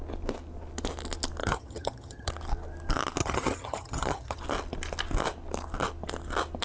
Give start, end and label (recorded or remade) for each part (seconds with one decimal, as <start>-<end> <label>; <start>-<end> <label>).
0.0-1.4 recorded; 1.4-2.3 remade; 2.3-3.2 recorded; 3.2-4.4 remade; 4.4-6.6 recorded